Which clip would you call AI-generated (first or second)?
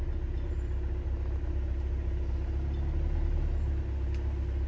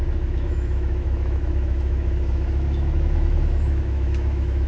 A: second